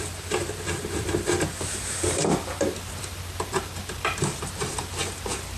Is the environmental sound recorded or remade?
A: remade